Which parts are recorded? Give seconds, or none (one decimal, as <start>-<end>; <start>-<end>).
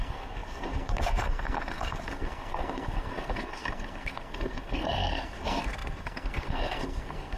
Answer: none